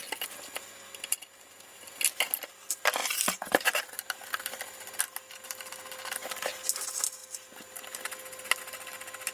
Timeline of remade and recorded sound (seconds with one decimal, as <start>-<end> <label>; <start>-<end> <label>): 0.0-9.3 recorded